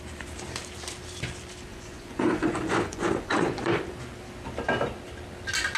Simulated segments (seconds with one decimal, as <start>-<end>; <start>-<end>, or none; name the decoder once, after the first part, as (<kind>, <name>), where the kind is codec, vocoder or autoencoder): 1.7-3.8 (vocoder, Vocos)